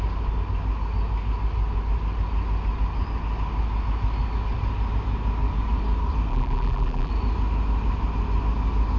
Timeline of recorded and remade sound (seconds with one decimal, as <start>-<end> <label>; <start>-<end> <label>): 0.0-6.3 recorded; 6.3-7.1 remade; 7.1-9.0 recorded